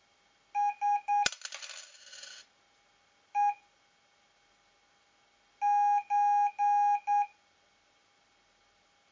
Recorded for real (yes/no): yes